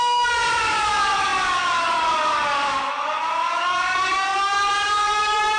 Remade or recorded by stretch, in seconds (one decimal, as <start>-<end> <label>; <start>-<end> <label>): 0.0-5.6 remade